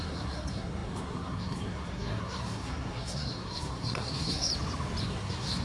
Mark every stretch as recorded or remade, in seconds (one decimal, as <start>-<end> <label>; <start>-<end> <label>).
0.0-4.5 remade; 4.5-5.0 recorded; 5.0-5.6 remade

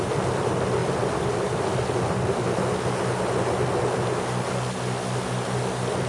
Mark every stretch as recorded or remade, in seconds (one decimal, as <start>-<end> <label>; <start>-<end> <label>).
0.0-6.1 recorded

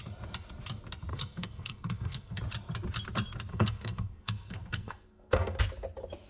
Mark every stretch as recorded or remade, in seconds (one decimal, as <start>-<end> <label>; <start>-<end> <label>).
0.0-1.1 recorded; 1.1-2.4 remade; 2.4-3.5 recorded; 3.5-5.6 remade; 5.6-6.3 recorded

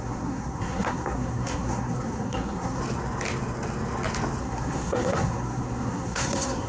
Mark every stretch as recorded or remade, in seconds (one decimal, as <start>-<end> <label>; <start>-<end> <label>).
0.0-2.8 remade; 2.8-4.4 recorded; 4.4-6.7 remade

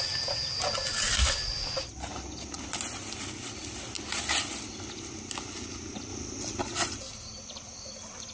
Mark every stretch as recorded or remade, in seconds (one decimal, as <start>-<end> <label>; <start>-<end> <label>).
0.0-8.3 recorded